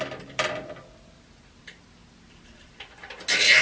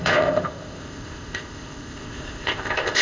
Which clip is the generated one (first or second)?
second